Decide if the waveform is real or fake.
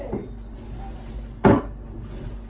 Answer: real